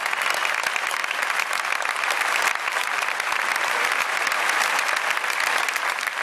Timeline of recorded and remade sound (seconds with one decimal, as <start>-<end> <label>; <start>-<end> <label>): 0.0-6.2 recorded